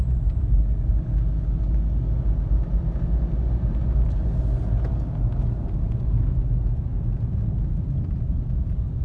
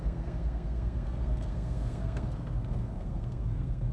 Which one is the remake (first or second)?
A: second